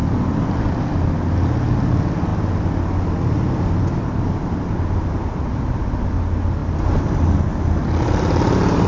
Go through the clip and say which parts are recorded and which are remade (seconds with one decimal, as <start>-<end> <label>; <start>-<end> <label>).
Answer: 0.0-8.9 recorded